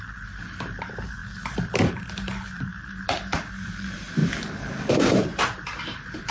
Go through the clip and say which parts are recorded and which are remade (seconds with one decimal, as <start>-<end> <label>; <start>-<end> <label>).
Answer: 0.0-2.7 remade; 2.7-3.5 recorded; 3.5-4.2 remade; 4.2-4.8 recorded; 4.8-6.3 remade